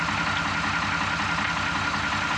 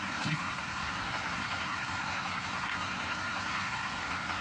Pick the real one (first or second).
first